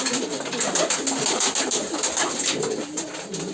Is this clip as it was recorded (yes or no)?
yes